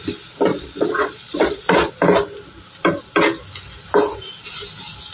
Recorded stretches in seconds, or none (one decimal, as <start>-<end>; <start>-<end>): 0.0-0.5; 1.9-5.1